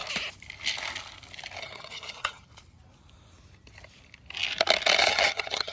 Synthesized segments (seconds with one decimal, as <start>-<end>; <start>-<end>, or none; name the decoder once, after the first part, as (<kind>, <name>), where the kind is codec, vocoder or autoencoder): 1.6-2.5 (vocoder, HiFi-GAN); 5.0-5.7